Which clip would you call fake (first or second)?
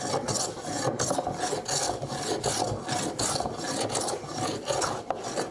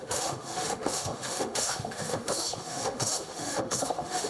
second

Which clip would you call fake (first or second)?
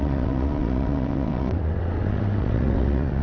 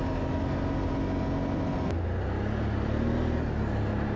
first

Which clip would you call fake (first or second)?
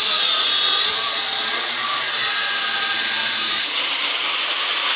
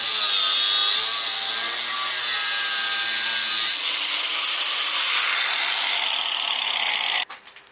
first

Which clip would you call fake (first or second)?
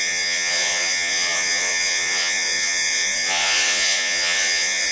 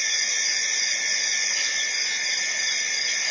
first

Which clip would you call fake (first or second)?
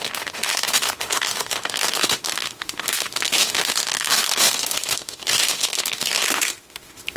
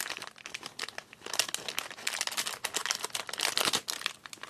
first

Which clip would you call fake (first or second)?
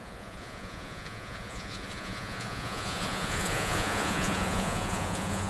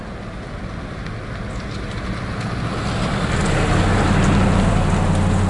first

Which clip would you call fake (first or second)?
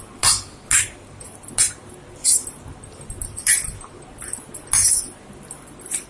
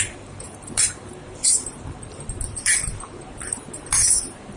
second